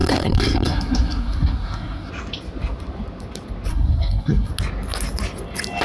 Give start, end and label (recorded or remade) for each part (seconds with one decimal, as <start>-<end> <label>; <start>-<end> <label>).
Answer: 0.0-2.1 remade; 2.1-3.7 recorded; 3.7-4.5 remade; 4.5-5.8 recorded